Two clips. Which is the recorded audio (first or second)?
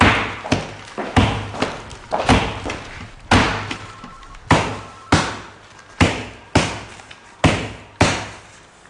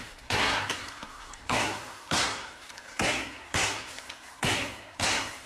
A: first